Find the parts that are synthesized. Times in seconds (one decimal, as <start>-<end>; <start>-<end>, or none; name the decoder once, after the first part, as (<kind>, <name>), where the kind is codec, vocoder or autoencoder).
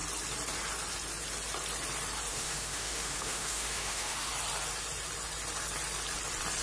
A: 2.3-4.3 (autoencoder, DAC-VAE)